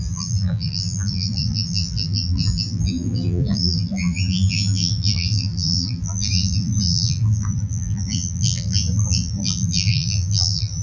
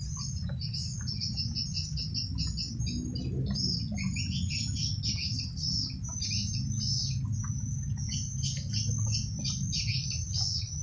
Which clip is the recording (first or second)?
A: second